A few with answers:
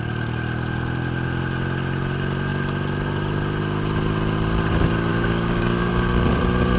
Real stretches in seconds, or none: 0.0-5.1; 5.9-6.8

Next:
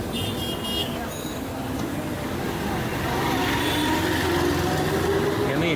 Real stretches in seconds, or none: 0.0-0.8; 1.5-5.8

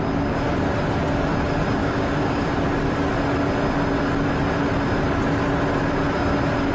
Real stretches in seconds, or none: 0.0-1.8; 2.5-6.7

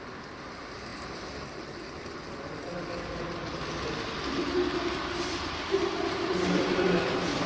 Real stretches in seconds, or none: 0.0-7.5

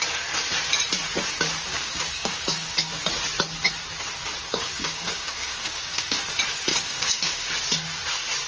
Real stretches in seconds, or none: 0.0-1.7; 3.0-4.5; 6.2-6.7; 7.5-8.5

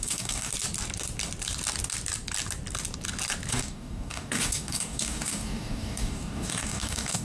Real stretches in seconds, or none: 0.5-3.5

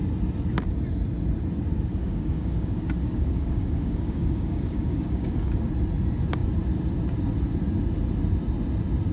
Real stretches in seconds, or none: 0.0-1.9; 5.7-9.1

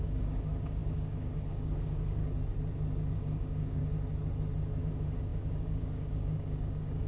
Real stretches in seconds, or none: 2.2-3.1; 3.8-4.8